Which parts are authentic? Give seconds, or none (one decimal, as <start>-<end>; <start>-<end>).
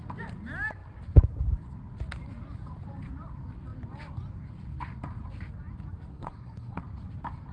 0.0-6.1; 6.8-7.5